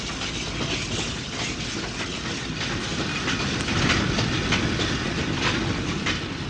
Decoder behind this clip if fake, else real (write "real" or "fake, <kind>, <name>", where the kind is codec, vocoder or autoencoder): real